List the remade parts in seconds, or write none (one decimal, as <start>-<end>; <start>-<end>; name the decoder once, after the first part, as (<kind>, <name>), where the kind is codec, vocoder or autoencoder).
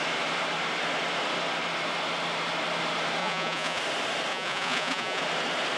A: 3.2-3.8 (vocoder, Vocos); 4.3-5.2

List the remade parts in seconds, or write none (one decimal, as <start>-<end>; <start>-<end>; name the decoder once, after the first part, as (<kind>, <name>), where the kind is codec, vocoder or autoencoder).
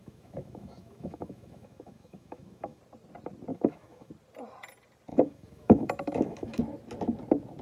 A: 0.0-2.8 (autoencoder, DAC-VAE); 3.5-4.1; 5.1-6.6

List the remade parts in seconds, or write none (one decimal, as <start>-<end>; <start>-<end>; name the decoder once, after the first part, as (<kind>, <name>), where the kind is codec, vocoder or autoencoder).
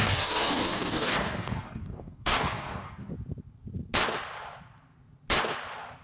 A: 0.0-3.1 (codec, DAC)